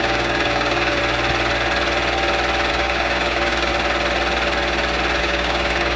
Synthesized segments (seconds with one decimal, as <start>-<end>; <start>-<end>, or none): 0.0-1.0; 2.7-3.7; 5.2-6.0